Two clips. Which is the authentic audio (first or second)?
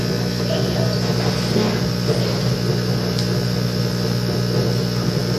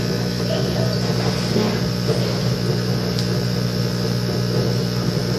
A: first